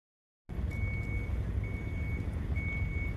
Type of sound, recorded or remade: recorded